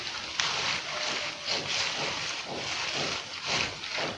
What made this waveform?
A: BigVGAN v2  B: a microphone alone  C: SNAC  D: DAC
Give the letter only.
B